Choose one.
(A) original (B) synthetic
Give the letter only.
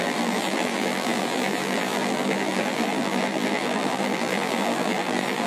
B